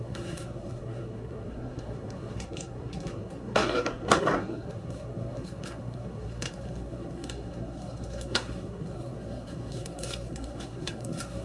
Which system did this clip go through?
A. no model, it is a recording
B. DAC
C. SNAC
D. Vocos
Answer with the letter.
C